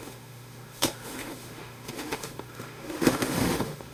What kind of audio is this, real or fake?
fake